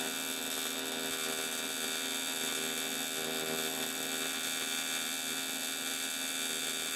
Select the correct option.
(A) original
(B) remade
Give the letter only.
A